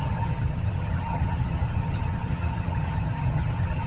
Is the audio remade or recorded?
remade